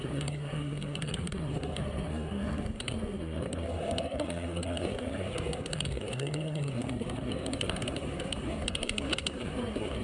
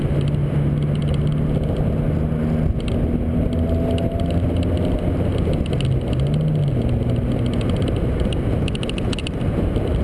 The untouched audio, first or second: second